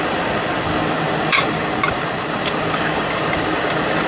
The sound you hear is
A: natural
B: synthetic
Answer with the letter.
A